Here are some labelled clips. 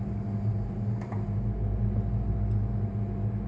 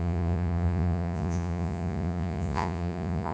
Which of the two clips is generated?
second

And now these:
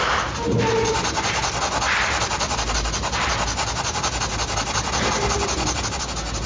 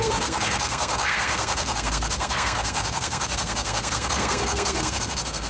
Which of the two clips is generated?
second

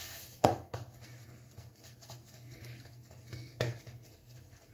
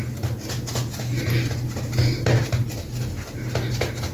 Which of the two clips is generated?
first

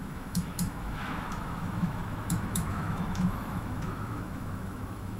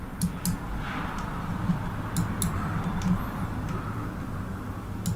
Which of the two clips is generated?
first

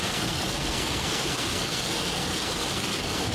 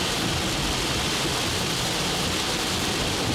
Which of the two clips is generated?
first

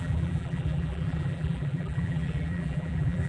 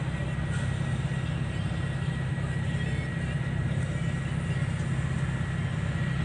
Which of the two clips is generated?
first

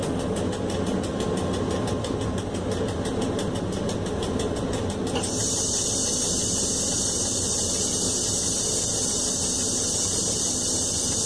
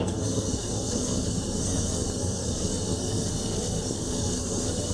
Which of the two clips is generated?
second